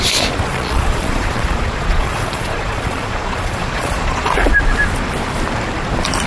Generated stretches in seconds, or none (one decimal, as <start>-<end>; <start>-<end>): 0.5-4.3